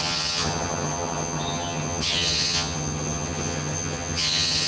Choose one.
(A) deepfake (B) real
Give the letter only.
A